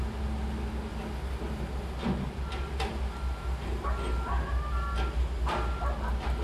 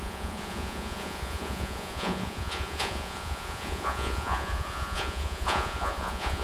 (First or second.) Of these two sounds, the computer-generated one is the second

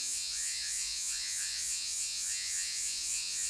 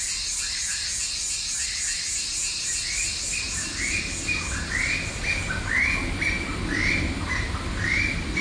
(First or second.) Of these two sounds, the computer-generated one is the first